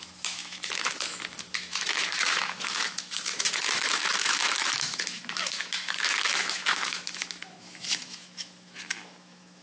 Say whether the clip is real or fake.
fake